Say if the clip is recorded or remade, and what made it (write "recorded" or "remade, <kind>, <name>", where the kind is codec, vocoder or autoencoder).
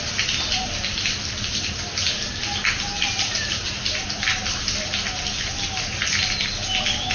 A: recorded